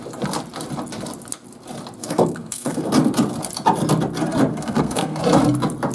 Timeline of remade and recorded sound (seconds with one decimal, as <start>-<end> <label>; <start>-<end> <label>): 0.0-2.0 recorded; 2.0-2.9 remade; 2.9-4.5 recorded; 4.5-5.2 remade; 5.2-5.9 recorded